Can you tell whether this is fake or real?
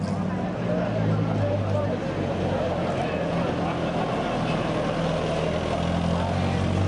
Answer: real